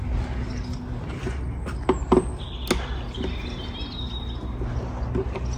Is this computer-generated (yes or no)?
no